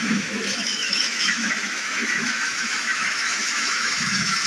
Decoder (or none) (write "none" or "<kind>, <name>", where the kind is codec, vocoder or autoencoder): autoencoder, DAC-VAE